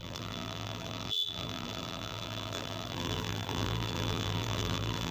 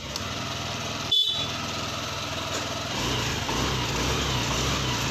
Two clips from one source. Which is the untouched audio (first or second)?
second